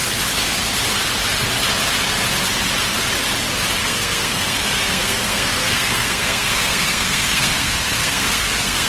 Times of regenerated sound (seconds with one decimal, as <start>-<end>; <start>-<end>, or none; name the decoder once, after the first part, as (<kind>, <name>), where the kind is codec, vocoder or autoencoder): 3.8-8.9 (codec, SNAC)